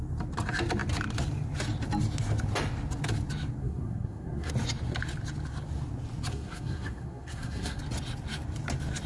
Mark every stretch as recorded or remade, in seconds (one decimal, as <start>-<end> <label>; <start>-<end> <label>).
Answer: 0.0-3.6 recorded; 3.6-4.5 remade; 4.5-6.3 recorded; 6.3-7.8 remade; 7.8-9.1 recorded